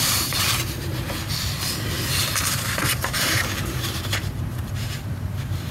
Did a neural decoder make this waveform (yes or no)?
yes